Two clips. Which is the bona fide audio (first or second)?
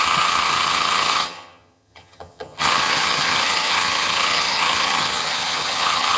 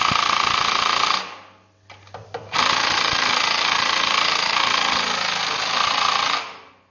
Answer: second